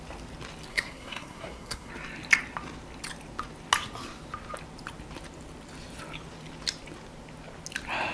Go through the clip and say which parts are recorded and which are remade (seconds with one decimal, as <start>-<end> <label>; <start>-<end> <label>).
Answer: 0.0-0.7 recorded; 0.7-1.9 remade; 1.9-8.1 recorded